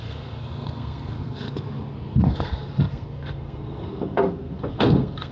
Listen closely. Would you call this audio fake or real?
fake